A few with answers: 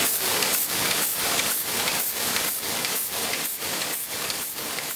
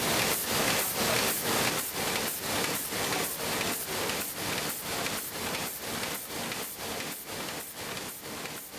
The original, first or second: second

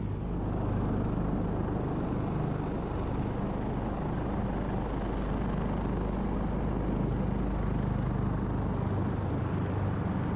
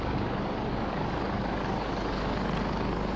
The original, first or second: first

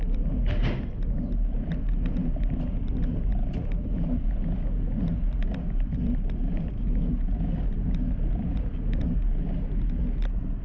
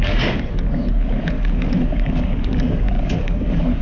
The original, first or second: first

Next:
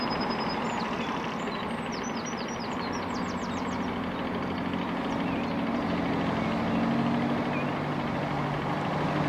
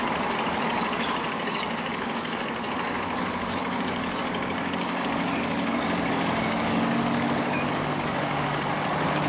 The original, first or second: first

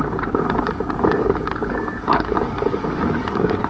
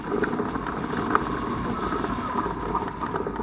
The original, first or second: second